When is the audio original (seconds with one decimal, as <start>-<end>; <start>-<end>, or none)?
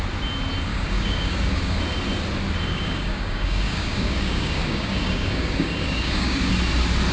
0.0-0.7; 1.8-2.7; 6.5-7.1